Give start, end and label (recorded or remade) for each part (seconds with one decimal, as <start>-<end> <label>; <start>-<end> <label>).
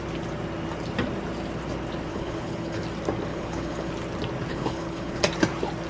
0.0-2.1 recorded; 2.1-2.8 remade; 2.8-3.3 recorded; 3.3-3.9 remade; 3.9-4.5 recorded; 4.5-5.2 remade; 5.2-5.9 recorded